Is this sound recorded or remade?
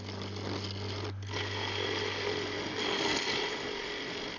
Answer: recorded